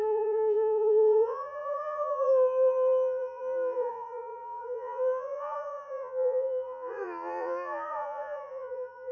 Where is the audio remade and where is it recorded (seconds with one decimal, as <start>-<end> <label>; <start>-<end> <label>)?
0.0-9.1 remade